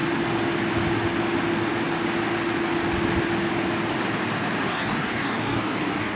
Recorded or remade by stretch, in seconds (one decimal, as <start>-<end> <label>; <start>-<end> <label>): 0.0-4.7 recorded; 4.7-6.2 remade